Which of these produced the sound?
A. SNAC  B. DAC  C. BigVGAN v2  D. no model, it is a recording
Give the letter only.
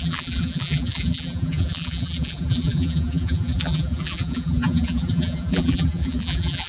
C